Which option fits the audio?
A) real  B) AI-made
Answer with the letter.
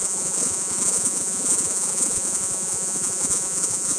B